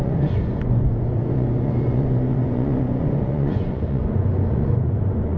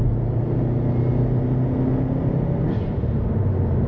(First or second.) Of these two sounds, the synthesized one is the first